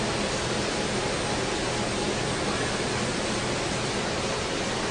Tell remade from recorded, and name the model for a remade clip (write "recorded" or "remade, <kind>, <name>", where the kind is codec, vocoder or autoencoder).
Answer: recorded